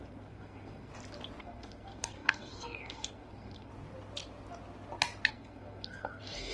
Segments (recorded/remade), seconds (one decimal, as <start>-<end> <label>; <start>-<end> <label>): 0.0-0.9 remade; 0.9-1.4 recorded; 1.4-3.7 remade; 3.7-5.3 recorded; 5.3-6.5 remade